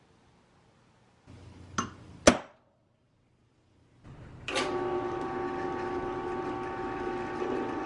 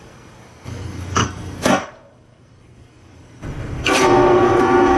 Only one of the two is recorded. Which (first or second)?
first